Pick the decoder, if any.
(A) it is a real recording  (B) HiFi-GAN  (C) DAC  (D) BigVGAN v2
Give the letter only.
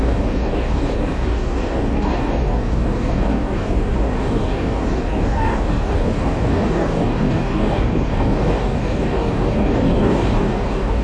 C